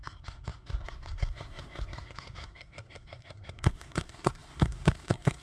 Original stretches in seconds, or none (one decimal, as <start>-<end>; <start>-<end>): none